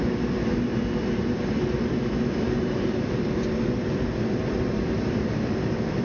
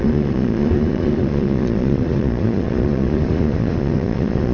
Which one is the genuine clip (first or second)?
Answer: first